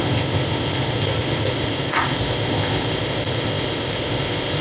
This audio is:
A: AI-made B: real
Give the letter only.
A